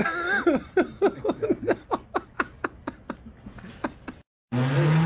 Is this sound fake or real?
real